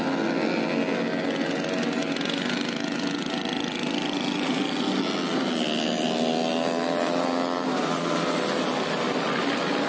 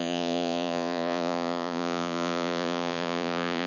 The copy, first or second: second